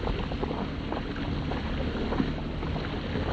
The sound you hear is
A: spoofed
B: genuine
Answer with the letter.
B